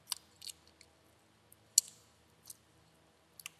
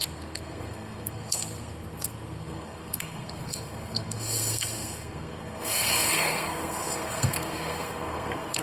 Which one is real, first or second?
first